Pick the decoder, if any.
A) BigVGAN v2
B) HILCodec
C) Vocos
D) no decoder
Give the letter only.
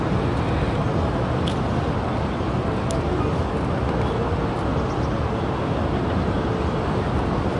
D